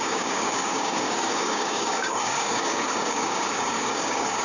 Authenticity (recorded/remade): remade